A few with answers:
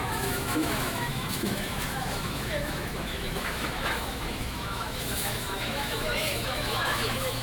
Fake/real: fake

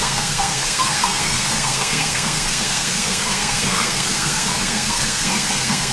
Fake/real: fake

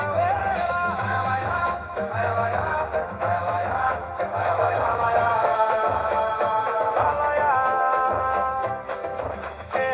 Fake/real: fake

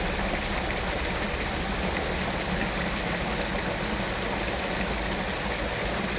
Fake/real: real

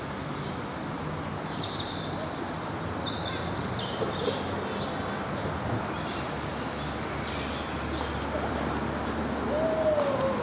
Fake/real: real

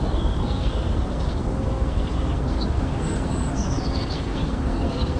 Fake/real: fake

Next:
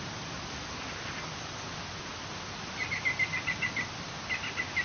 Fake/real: real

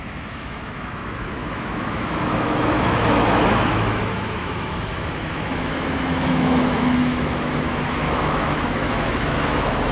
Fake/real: fake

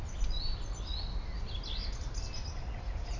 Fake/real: real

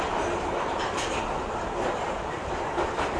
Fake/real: fake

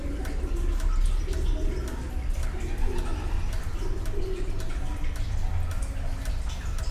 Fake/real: real